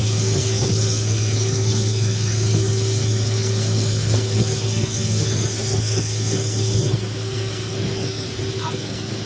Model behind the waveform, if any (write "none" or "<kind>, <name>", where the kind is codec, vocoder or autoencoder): codec, SNAC